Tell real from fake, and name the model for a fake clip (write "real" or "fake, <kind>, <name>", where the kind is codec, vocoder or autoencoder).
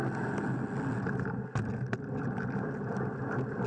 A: real